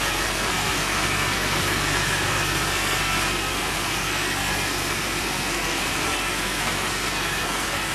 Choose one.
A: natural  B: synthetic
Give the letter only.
B